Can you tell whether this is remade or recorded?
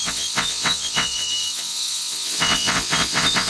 remade